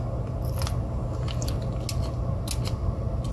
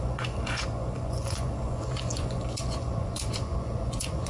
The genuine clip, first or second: first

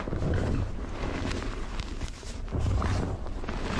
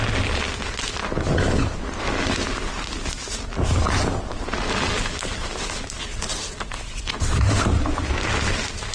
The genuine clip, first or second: second